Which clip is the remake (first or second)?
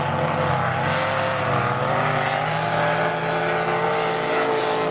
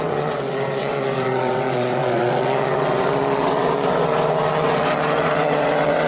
second